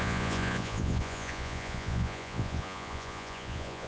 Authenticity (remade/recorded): remade